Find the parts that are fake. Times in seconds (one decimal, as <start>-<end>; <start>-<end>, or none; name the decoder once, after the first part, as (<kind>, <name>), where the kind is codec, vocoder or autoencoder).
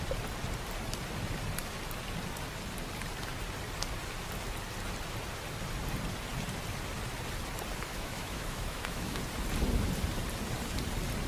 7.9-9.2 (autoencoder, DAC-VAE)